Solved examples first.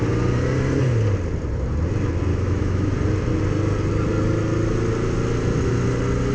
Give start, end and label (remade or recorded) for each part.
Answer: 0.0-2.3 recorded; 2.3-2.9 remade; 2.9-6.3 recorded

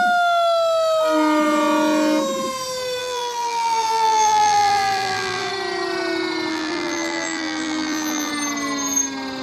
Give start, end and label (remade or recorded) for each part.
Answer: 0.0-3.0 recorded; 3.0-5.5 remade; 5.5-6.5 recorded; 6.5-8.3 remade; 8.3-9.4 recorded

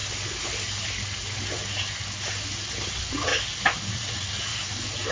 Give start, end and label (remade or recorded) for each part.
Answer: 0.0-2.9 recorded; 2.9-3.3 remade; 3.3-3.9 recorded; 3.9-4.5 remade; 4.5-5.1 recorded

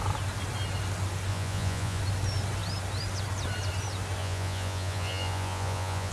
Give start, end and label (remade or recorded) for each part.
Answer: 0.0-1.3 recorded; 1.3-2.0 remade; 2.0-4.2 recorded; 4.2-6.1 remade

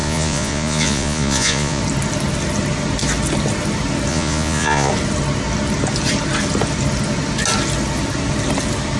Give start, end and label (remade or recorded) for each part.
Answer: 0.0-1.8 remade; 1.8-4.1 recorded; 4.1-4.9 remade; 4.9-9.0 recorded

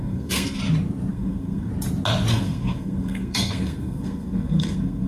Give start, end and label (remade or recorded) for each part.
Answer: 0.0-0.6 remade; 0.6-1.1 recorded; 1.1-1.7 remade; 1.7-2.3 recorded; 2.3-5.1 remade